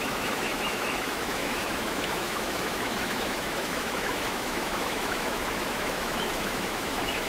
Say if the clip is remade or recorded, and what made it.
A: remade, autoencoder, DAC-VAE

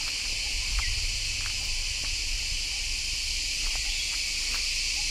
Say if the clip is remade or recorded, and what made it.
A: recorded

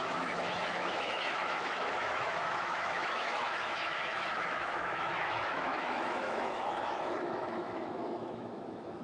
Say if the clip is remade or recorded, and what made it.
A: remade, autoencoder, DAC-VAE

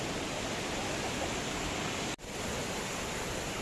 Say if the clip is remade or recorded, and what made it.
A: recorded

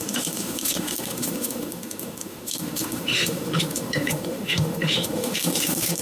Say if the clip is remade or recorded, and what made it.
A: remade, autoencoder, DAC-VAE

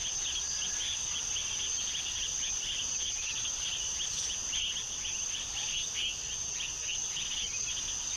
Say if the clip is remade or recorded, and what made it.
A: recorded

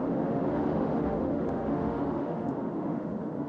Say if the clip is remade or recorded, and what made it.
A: remade, autoencoder, DAC-VAE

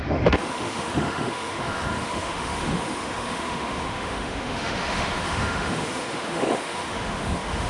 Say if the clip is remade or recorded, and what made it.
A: remade, autoencoder, DAC-VAE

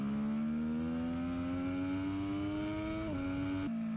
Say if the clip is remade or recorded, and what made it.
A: recorded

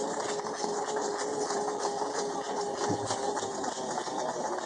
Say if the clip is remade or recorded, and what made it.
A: recorded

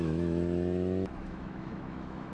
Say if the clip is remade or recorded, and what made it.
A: remade, autoencoder, DAC-VAE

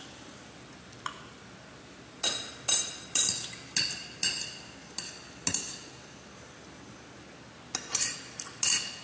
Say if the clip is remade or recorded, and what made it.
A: recorded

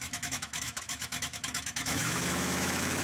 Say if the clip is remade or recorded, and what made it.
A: remade, autoencoder, DAC-VAE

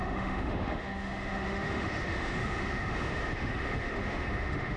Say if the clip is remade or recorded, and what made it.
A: remade, autoencoder, DAC-VAE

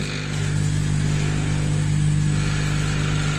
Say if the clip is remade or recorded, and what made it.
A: recorded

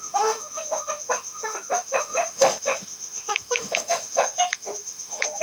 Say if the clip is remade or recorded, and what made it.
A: remade, autoencoder, DAC-VAE